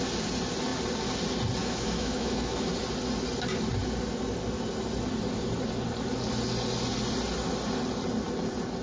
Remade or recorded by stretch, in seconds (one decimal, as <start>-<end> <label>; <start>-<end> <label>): 0.0-1.6 recorded; 1.6-2.7 remade; 2.7-8.8 recorded